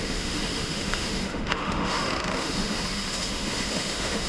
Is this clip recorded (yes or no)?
no